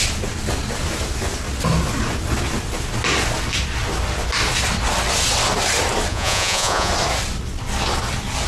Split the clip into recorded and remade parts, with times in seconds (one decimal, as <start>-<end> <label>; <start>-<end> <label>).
0.0-6.1 recorded; 6.1-6.9 remade; 6.9-8.5 recorded